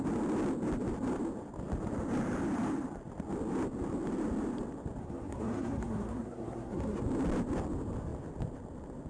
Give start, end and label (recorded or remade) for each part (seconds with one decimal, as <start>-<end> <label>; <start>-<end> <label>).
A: 0.0-5.0 recorded; 5.0-7.0 remade; 7.0-9.1 recorded